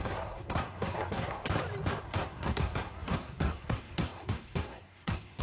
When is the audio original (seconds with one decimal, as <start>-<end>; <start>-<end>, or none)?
1.4-2.0